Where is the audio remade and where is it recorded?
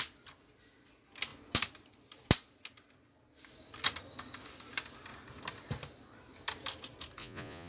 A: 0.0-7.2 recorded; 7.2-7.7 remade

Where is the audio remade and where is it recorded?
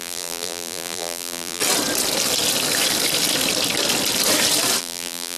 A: 0.0-1.6 remade; 1.6-4.8 recorded; 4.8-5.4 remade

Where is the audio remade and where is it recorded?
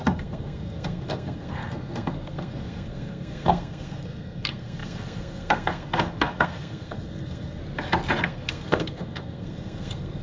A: 0.0-7.6 remade; 7.6-8.2 recorded; 8.2-10.2 remade